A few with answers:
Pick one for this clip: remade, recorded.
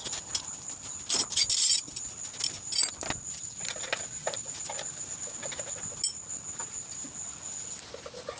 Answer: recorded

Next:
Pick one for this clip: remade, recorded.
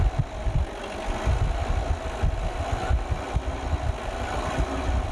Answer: recorded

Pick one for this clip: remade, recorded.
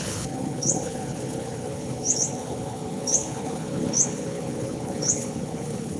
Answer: remade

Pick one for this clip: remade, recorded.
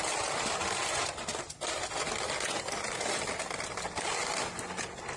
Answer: recorded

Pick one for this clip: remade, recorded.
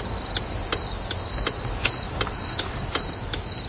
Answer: recorded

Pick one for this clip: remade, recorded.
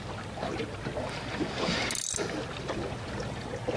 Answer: recorded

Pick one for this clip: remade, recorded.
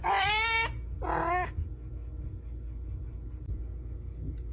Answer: recorded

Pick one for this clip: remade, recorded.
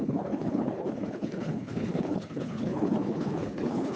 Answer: remade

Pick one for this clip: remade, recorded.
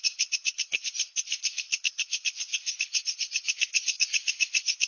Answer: remade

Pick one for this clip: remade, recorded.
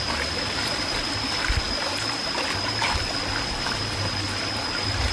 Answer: recorded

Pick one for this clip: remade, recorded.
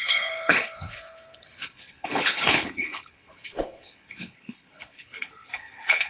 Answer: remade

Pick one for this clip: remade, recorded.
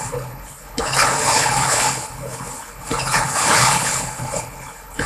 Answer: remade